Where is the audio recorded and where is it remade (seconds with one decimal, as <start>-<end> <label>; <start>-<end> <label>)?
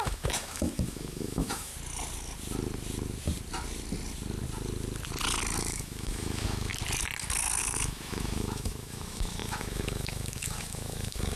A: 0.0-1.7 remade; 1.7-5.6 recorded; 5.6-6.7 remade; 6.7-7.6 recorded; 7.6-11.4 remade